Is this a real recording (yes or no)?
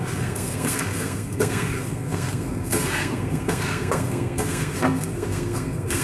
no